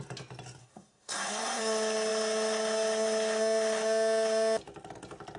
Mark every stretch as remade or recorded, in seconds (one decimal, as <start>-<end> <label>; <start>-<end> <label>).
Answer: 0.0-0.6 recorded; 0.6-1.6 remade; 1.6-5.4 recorded